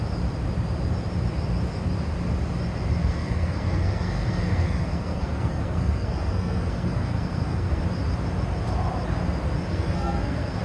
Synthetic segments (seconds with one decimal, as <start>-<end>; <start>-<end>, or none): 3.0-7.8; 9.7-10.6